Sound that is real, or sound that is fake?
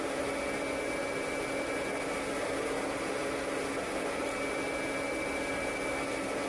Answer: real